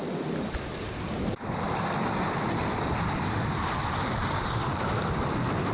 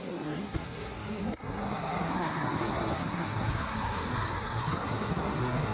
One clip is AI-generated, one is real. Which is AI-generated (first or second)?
second